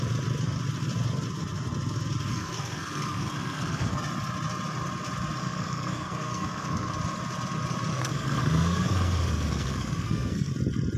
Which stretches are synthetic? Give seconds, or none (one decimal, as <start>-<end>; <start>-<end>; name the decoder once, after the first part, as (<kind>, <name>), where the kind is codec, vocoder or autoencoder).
2.3-4.0 (codec, SNAC); 5.4-6.9; 7.9-10.5

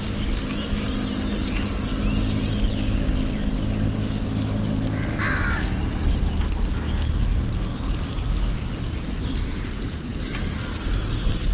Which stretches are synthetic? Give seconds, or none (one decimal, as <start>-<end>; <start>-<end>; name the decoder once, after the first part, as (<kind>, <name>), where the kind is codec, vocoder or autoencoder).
none

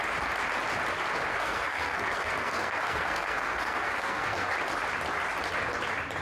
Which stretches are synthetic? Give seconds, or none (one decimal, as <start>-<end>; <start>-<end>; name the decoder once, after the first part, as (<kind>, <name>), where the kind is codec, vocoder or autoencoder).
1.3-4.5 (codec, SNAC)

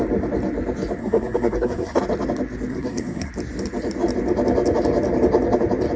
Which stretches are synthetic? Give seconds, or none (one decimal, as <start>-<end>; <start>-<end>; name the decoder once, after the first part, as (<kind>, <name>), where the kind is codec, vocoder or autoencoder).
1.0-2.0 (codec, SNAC); 2.7-3.3

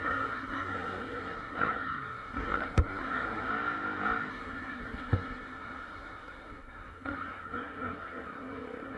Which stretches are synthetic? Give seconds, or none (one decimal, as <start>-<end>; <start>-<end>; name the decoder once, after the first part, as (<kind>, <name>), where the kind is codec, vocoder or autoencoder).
0.0-3.5 (codec, SNAC); 4.3-9.0

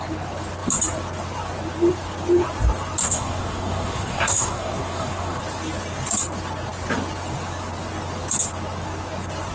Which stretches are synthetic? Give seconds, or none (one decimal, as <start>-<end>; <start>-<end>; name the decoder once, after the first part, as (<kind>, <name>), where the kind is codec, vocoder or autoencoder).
3.0-5.4 (codec, SNAC)

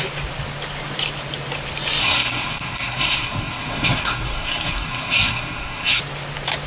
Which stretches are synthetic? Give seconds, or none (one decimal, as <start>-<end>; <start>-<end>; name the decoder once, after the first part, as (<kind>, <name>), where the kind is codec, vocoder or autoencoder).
2.0-6.0 (codec, SNAC)

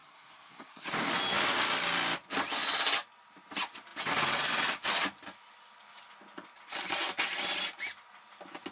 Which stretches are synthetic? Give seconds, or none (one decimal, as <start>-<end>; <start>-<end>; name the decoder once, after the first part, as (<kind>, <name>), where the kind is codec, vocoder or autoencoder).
0.0-0.9 (codec, SNAC)